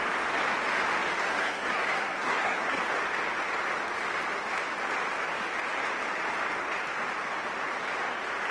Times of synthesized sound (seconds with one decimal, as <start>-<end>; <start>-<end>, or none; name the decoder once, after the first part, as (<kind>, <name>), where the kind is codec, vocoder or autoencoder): 1.3-2.8 (codec, SNAC)